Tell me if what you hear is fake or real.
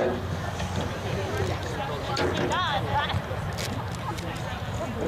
real